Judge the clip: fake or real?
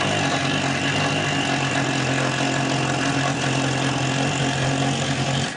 real